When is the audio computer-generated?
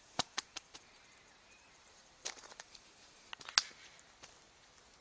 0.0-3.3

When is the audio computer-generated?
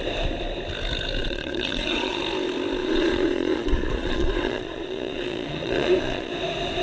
1.2-2.2; 2.8-6.3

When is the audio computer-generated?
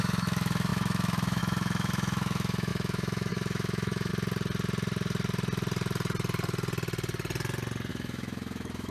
0.0-4.1; 7.9-8.9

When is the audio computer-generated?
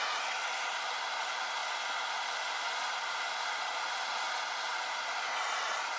none